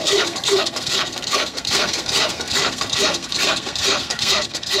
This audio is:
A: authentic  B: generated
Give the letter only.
B